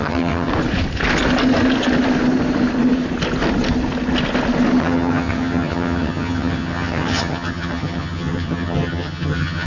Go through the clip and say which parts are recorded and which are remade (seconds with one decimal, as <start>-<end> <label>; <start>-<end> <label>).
0.0-0.5 remade; 0.5-4.8 recorded; 4.8-9.7 remade